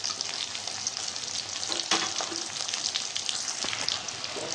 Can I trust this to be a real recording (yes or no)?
yes